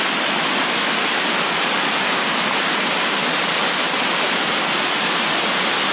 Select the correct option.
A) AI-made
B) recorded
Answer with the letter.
B